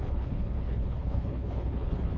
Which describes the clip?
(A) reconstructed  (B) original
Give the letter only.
A